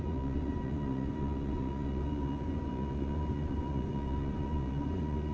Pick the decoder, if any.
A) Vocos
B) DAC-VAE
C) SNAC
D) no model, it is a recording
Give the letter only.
A